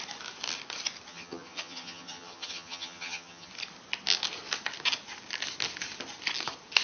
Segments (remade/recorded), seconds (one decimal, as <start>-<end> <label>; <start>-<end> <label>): 0.0-1.1 recorded; 1.1-3.5 remade; 3.5-6.8 recorded